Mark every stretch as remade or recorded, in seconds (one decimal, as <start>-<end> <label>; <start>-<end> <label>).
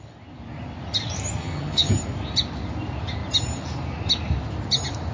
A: 0.0-1.4 recorded; 1.4-1.9 remade; 1.9-5.1 recorded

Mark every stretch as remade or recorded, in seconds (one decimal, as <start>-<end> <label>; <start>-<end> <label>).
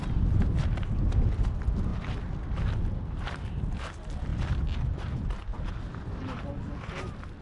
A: 0.0-7.4 recorded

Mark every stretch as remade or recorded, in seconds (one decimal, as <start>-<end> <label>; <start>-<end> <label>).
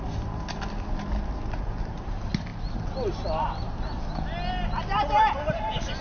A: 0.0-6.0 recorded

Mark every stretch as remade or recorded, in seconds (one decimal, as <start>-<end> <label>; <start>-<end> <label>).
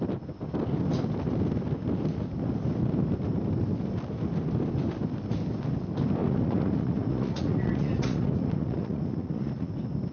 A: 0.0-6.2 recorded; 6.2-9.7 remade; 9.7-10.1 recorded